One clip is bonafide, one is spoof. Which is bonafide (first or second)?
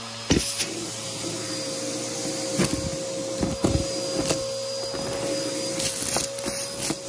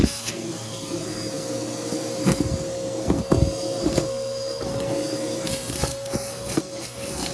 first